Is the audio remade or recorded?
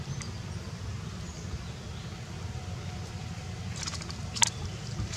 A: recorded